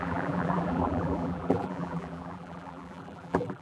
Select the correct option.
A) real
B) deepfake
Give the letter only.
B